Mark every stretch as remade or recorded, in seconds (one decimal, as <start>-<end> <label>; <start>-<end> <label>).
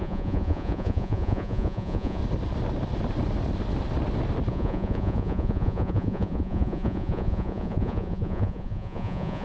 0.0-2.2 remade; 2.2-4.5 recorded; 4.5-9.4 remade